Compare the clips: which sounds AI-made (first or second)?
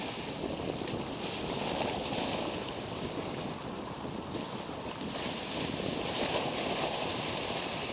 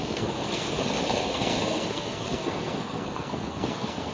second